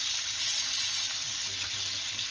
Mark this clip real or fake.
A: real